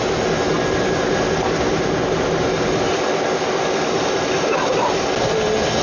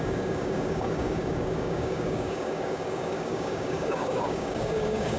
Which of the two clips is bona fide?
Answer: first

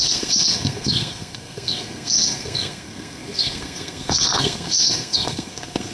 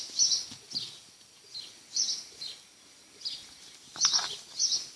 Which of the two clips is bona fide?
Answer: second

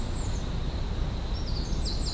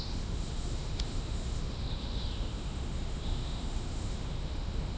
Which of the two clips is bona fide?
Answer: first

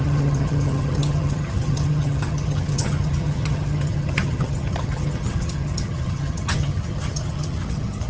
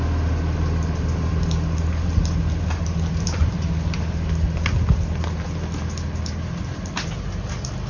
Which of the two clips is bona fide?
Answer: second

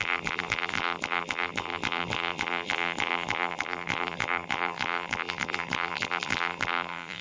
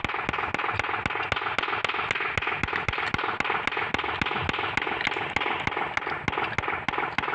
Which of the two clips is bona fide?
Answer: second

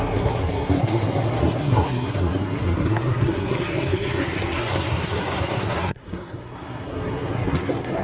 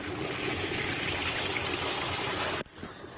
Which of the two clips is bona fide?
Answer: second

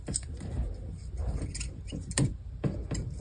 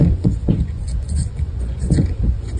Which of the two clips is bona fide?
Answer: first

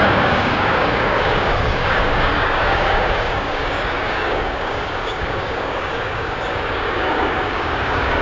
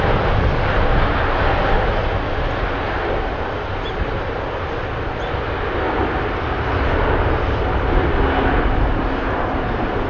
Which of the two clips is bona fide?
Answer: second